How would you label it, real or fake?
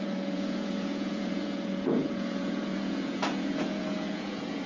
fake